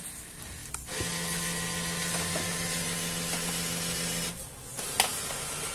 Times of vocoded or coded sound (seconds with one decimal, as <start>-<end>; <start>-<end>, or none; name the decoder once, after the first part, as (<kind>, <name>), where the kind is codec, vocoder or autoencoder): none